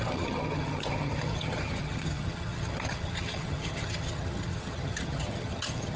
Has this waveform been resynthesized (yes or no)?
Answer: yes